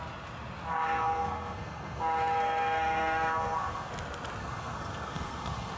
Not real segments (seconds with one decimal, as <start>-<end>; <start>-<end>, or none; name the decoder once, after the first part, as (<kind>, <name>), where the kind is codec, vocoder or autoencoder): 0.7-3.9 (codec, SNAC); 4.4-5.8